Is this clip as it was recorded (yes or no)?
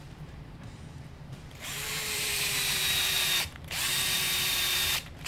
no